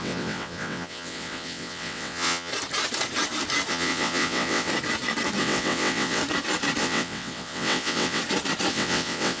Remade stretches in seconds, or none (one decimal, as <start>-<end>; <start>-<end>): 0.0-2.5; 3.7-4.7; 5.4-6.2; 6.8-8.2; 8.7-9.4